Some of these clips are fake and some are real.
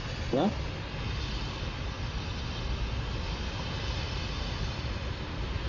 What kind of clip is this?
real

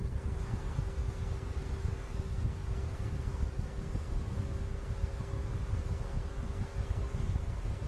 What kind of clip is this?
fake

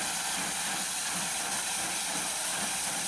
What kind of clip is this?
real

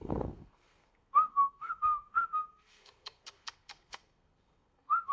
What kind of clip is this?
fake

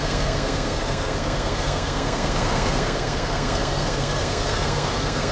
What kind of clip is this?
fake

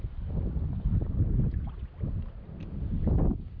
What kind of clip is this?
real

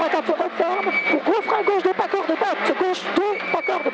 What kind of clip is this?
real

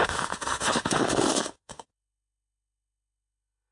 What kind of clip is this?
fake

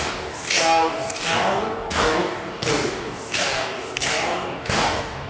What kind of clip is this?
fake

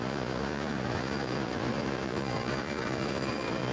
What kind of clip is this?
fake